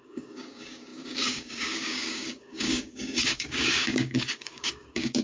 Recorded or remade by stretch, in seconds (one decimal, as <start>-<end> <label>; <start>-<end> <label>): 0.0-5.2 remade

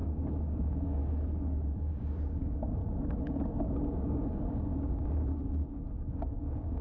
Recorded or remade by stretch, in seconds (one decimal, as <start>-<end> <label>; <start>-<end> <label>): 0.0-1.0 remade; 1.0-1.9 recorded; 1.9-2.8 remade; 2.8-3.8 recorded; 3.8-6.8 remade

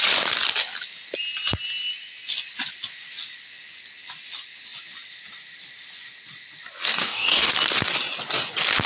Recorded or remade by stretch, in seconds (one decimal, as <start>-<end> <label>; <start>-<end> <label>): 0.0-7.0 recorded; 7.0-7.5 remade; 7.5-8.9 recorded

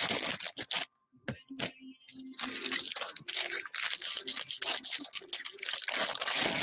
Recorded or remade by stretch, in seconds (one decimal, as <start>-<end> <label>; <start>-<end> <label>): 0.0-6.6 recorded

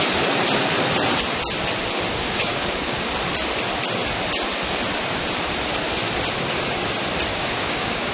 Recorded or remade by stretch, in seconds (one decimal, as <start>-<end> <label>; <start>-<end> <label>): 0.0-2.1 recorded; 2.1-3.1 remade; 3.1-7.3 recorded; 7.3-8.1 remade

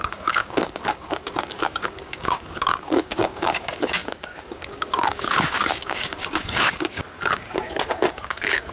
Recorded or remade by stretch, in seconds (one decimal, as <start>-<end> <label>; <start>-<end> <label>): 0.0-8.7 remade

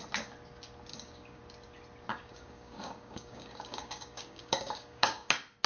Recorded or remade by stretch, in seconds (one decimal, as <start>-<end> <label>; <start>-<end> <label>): 0.0-0.9 recorded; 0.9-1.4 remade; 1.4-2.1 recorded; 2.1-5.3 remade; 5.3-5.7 recorded